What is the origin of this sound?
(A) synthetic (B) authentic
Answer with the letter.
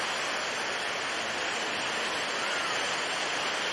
B